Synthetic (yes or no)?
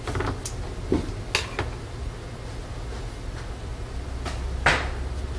no